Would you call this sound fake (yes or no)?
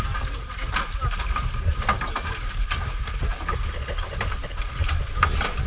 no